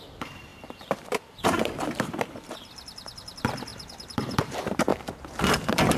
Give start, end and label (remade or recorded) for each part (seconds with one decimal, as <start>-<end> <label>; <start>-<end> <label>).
0.0-4.9 remade; 4.9-6.0 recorded